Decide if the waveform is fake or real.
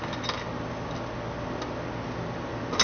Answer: real